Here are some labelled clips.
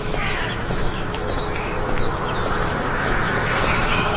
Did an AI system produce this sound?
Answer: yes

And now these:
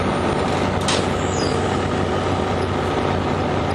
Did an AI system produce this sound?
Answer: no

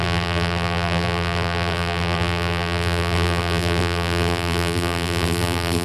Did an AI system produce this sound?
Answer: yes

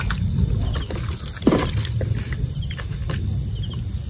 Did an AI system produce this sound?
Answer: no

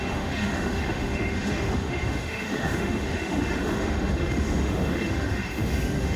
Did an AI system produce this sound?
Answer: yes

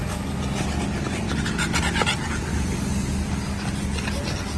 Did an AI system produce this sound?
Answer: no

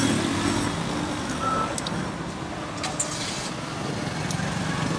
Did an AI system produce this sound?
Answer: no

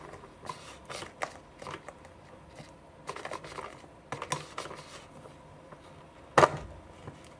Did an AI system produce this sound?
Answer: no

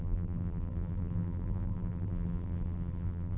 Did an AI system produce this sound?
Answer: yes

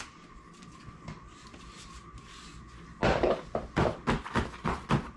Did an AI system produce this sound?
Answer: no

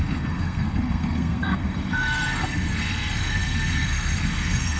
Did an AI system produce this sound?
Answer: yes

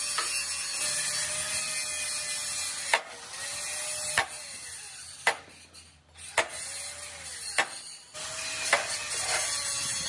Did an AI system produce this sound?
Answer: no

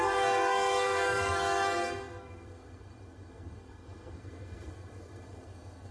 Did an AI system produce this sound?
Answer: yes